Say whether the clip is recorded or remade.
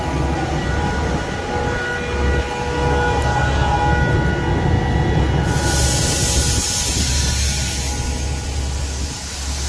recorded